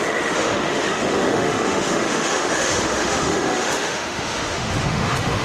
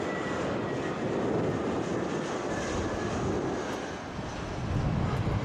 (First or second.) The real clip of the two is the second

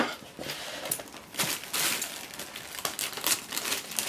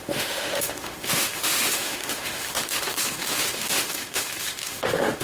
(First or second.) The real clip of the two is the first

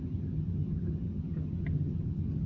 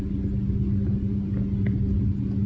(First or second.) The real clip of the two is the second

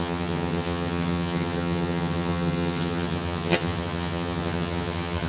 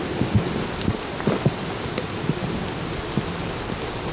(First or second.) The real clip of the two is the second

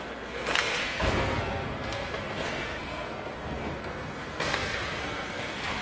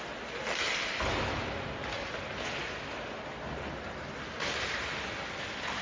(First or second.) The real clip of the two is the second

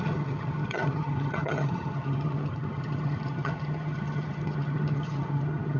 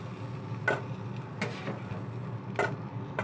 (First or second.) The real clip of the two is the second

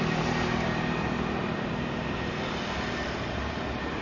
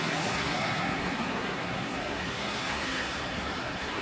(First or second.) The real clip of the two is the first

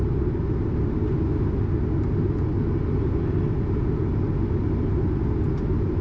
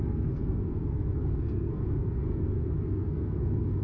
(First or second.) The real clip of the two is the first